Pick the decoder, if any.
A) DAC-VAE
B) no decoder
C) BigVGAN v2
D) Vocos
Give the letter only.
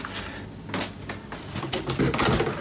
B